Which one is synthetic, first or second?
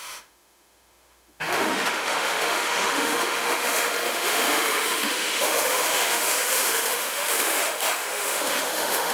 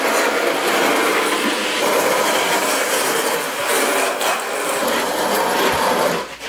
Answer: first